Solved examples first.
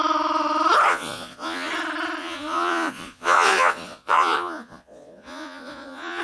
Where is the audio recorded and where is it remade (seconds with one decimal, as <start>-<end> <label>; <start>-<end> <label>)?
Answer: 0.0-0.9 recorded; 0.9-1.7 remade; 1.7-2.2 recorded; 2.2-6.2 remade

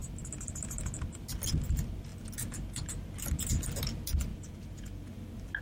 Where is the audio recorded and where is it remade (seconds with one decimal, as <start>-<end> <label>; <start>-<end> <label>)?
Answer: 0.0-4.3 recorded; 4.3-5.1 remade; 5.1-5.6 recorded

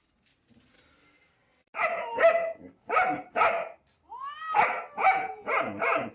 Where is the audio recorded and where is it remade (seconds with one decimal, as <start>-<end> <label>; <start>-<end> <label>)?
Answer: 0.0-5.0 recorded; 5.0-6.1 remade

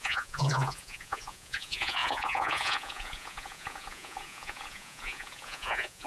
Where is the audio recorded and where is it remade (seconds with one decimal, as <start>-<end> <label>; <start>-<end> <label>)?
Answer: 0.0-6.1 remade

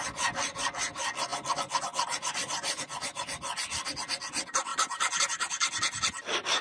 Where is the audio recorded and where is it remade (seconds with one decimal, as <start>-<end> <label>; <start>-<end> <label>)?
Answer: 0.0-6.6 recorded

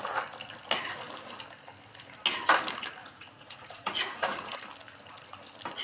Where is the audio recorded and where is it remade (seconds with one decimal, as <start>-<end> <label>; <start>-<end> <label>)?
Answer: 0.0-3.0 recorded; 3.0-4.6 remade; 4.6-5.8 recorded

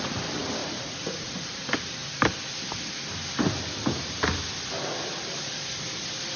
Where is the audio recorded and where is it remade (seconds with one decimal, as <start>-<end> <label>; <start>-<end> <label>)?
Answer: 0.0-0.6 recorded; 0.6-1.3 remade; 1.3-6.4 recorded

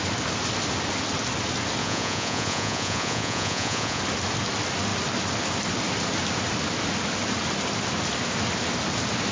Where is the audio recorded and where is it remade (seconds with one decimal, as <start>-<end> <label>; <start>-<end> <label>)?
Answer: 0.0-1.8 recorded; 1.8-4.0 remade; 4.0-9.3 recorded